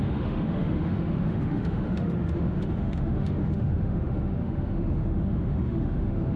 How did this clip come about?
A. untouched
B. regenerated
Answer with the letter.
B